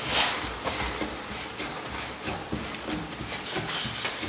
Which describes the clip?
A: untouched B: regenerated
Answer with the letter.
A